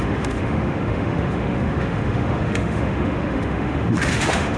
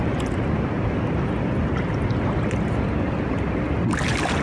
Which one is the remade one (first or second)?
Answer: first